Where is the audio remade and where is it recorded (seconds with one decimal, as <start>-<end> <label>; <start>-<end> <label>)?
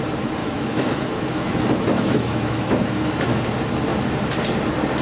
0.0-0.4 recorded; 0.4-3.4 remade; 3.4-5.0 recorded